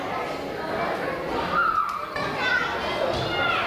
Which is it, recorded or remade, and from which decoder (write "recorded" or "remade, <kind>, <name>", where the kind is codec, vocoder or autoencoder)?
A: recorded